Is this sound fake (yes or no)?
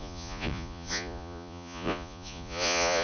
yes